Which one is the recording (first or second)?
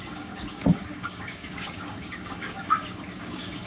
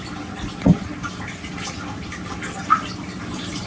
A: second